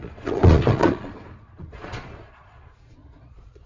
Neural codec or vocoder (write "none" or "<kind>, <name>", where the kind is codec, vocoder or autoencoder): vocoder, Vocos